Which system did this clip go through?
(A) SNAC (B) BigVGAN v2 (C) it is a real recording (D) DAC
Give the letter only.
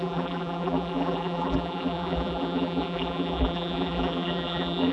B